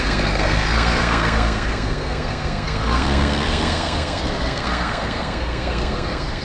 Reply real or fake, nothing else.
fake